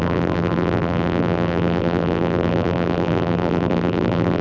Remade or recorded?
remade